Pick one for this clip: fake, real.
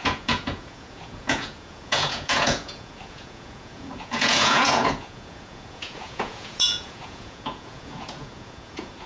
fake